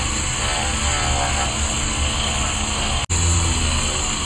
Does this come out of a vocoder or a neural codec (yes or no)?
no